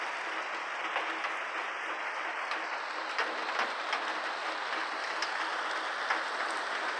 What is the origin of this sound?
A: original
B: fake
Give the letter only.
A